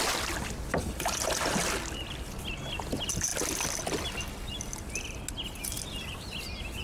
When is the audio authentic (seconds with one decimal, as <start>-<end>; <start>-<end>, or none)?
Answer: 0.0-6.8